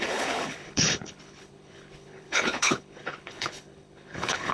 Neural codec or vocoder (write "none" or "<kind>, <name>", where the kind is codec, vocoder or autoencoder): codec, HILCodec